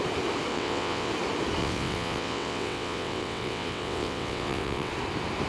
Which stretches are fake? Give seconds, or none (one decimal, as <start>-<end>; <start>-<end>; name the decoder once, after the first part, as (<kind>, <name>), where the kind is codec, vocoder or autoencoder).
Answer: 0.5-1.1 (vocoder, WaveNeXt); 1.6-4.9